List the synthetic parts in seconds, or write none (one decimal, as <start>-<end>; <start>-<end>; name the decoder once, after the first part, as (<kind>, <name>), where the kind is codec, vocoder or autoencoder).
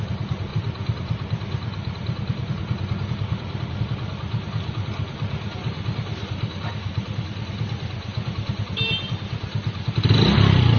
0.5-3.8 (vocoder, BigVGAN v2)